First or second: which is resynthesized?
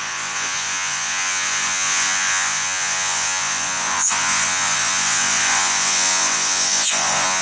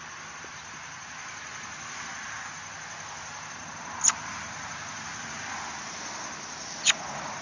first